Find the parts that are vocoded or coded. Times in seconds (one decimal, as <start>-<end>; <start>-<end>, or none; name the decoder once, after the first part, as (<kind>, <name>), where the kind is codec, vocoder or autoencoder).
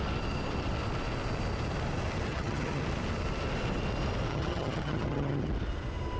2.3-2.8 (vocoder, HiFi-GAN); 4.3-5.5